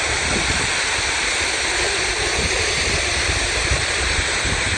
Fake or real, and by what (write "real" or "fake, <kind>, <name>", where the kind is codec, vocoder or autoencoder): real